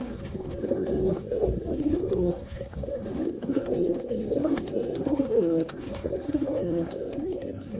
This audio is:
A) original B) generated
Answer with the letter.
B